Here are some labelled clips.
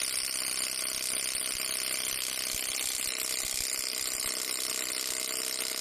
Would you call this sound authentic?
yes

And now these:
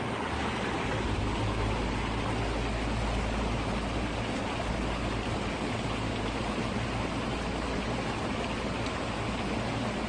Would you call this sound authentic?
yes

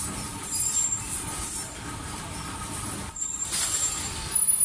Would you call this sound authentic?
no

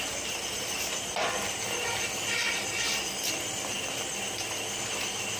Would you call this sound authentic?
no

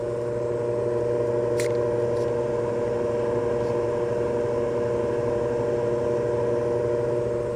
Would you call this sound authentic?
yes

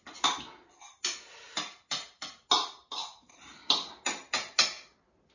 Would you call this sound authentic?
yes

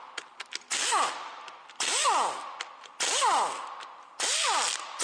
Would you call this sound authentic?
yes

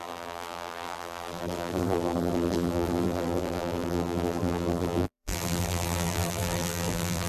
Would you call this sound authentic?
no